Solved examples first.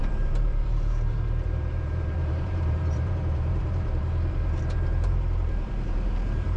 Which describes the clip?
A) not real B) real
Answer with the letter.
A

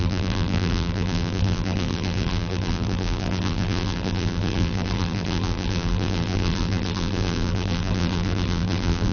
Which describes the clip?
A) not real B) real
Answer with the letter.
A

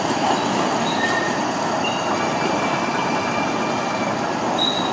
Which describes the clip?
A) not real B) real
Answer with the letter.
B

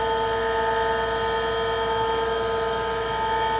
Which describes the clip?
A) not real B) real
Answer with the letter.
B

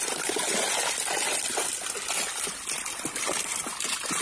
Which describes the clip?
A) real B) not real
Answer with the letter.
A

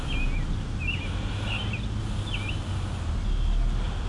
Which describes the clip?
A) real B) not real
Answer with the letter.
A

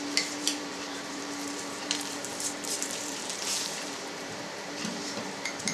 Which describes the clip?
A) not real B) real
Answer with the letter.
A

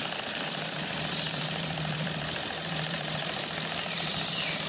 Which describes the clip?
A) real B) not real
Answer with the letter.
B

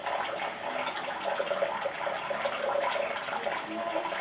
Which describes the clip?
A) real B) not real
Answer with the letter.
B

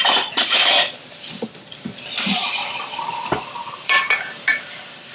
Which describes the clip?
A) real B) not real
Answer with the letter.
B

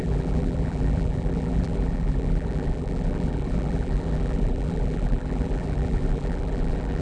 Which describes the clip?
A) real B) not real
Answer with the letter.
B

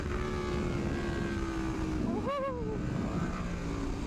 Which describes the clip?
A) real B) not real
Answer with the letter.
A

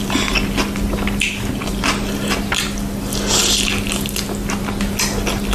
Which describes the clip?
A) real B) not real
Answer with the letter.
A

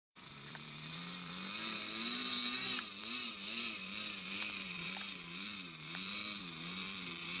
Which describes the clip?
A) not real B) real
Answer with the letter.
A